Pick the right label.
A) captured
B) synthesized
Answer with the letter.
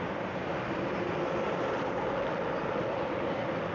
A